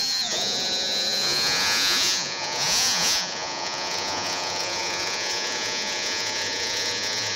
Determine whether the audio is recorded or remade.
remade